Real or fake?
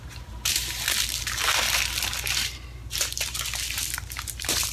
real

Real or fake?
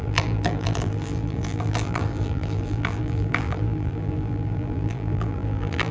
fake